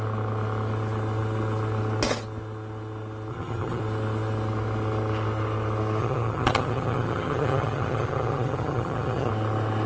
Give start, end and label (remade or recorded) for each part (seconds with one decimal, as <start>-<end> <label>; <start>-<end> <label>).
0.0-3.3 recorded; 3.3-3.8 remade; 3.8-6.0 recorded; 6.0-9.3 remade; 9.3-9.9 recorded